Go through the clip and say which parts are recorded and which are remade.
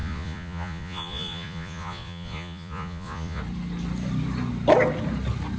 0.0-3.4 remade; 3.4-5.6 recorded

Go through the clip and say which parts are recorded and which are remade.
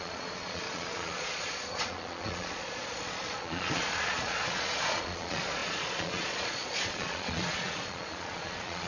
0.0-8.9 remade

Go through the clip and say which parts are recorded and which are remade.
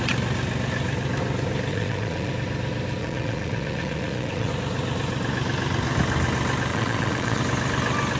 0.0-1.7 recorded; 1.7-2.3 remade; 2.3-3.0 recorded; 3.0-4.5 remade; 4.5-6.7 recorded; 6.7-7.4 remade; 7.4-8.2 recorded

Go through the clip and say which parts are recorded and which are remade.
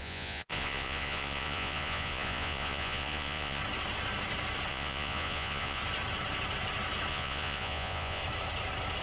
0.0-3.6 remade; 3.6-4.7 recorded; 4.7-5.8 remade; 5.8-7.1 recorded; 7.1-8.2 remade; 8.2-9.0 recorded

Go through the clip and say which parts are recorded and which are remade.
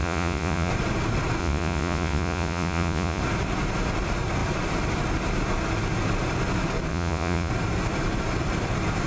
0.0-0.7 remade; 0.7-1.4 recorded; 1.4-3.2 remade; 3.2-6.9 recorded; 6.9-7.5 remade; 7.5-9.1 recorded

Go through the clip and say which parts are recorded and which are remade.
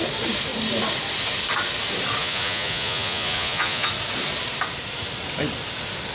0.0-2.2 recorded; 2.2-3.9 remade; 3.9-6.1 recorded